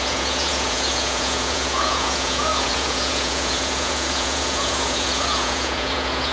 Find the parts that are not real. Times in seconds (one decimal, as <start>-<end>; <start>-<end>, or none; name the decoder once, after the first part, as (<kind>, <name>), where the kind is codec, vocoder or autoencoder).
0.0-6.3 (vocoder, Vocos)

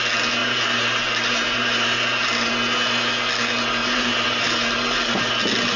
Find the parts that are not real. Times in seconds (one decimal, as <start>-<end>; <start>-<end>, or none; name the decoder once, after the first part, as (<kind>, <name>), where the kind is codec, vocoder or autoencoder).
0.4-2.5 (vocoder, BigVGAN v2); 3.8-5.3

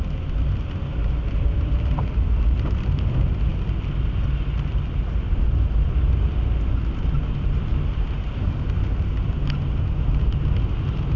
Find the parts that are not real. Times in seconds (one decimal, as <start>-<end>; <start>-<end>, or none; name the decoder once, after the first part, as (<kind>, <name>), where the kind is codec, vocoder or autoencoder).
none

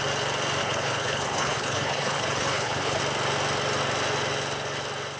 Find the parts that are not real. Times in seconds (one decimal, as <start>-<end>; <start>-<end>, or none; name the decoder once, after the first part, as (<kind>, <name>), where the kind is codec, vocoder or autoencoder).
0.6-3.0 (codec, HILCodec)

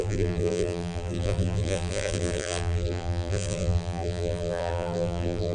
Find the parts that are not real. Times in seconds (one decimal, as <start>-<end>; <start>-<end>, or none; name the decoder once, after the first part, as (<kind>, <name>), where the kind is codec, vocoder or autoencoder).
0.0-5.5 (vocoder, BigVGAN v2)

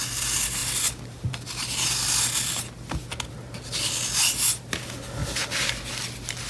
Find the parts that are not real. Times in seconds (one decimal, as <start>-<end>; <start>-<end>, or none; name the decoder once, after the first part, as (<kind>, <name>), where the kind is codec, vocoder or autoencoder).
none